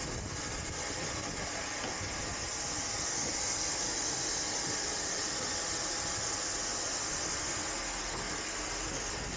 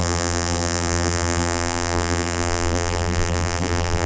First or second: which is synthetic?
second